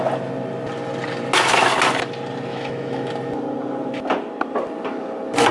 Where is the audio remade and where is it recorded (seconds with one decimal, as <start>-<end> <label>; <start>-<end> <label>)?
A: 0.0-2.5 recorded; 2.5-3.1 remade; 3.1-5.5 recorded